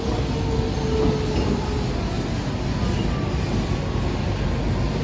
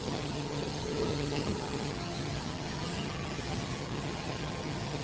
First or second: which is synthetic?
second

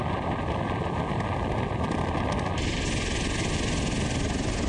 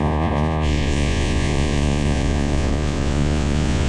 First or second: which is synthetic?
second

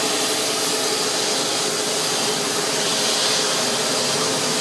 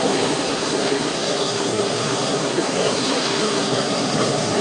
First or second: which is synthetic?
second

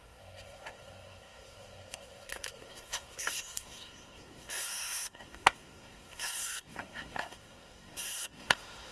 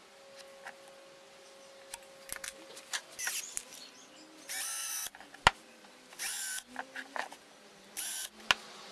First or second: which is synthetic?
first